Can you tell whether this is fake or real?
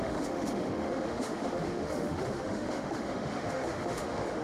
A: fake